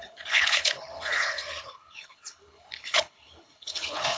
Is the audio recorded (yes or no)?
no